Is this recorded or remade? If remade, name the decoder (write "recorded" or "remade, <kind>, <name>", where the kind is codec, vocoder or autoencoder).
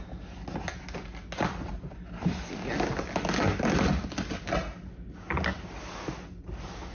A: recorded